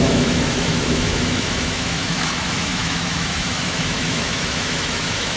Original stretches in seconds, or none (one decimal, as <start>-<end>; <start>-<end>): none

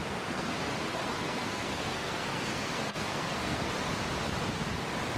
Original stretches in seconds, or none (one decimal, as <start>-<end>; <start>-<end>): 0.5-0.9; 3.7-5.2